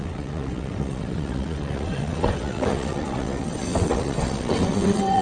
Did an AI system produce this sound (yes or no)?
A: yes